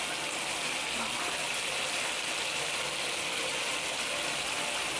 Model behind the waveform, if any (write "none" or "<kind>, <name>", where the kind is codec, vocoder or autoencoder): none